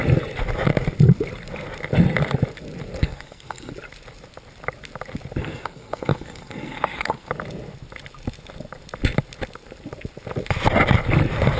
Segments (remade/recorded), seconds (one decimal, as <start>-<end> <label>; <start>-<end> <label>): 0.0-3.0 recorded; 3.0-3.7 remade; 3.7-5.4 recorded; 5.4-7.3 remade; 7.3-11.6 recorded